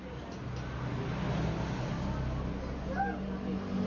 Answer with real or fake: real